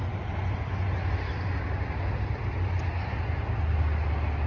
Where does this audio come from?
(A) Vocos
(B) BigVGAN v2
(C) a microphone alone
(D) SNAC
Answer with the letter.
C